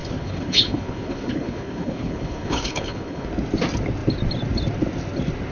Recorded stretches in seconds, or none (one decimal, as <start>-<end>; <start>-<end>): 3.3-5.5